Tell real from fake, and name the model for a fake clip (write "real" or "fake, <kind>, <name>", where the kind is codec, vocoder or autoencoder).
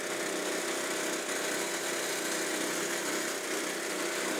real